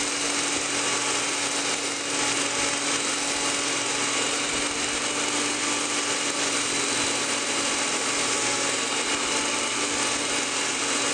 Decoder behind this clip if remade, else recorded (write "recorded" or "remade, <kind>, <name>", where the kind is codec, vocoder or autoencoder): recorded